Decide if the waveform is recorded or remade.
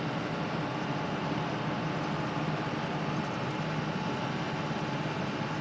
recorded